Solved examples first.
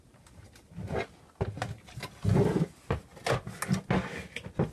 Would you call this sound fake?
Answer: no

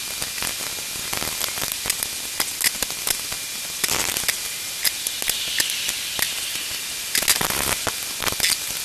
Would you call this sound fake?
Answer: no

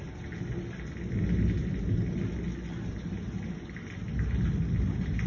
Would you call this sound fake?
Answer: no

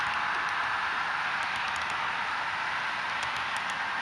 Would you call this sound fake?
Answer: no